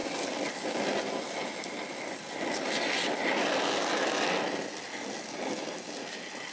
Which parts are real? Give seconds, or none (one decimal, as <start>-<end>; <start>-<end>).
0.0-6.5

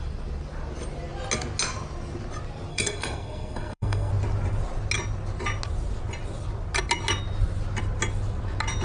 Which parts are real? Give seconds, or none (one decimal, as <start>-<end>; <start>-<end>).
0.0-2.7; 4.1-8.8

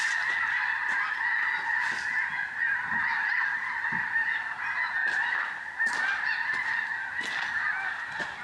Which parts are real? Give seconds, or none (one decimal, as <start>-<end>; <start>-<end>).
0.0-3.0; 4.0-8.4

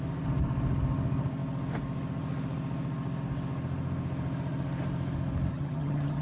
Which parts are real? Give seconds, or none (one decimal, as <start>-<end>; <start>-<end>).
0.0-5.5

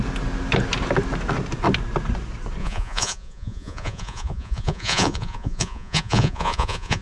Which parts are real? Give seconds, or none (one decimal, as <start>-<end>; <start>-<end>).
0.0-2.6